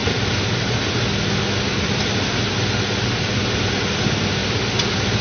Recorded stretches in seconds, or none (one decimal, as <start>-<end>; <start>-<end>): 0.0-5.2